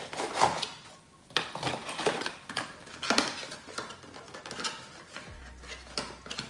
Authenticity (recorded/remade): recorded